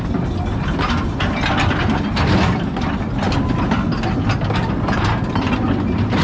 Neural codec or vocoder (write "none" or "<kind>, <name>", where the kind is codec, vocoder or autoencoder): none